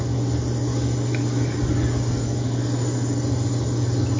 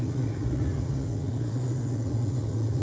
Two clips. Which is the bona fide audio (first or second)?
first